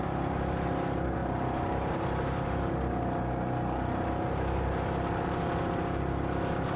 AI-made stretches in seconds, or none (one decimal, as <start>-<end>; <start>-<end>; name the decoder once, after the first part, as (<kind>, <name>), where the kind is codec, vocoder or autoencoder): none